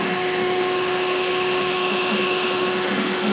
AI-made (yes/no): yes